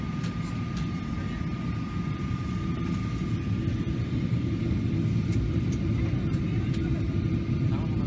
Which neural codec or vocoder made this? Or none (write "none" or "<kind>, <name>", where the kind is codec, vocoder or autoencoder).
none